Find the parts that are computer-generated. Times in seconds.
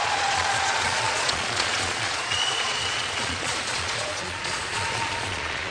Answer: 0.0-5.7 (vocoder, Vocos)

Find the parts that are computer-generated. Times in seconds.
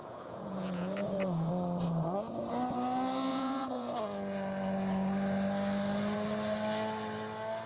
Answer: 0.0-1.5 (vocoder, Vocos); 3.3-4.0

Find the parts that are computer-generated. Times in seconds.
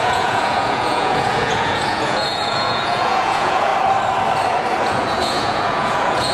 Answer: 0.0-3.7 (vocoder, Vocos); 4.8-6.3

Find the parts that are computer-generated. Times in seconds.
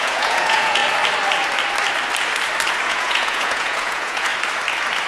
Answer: 0.0-0.8 (vocoder, Vocos); 2.9-4.3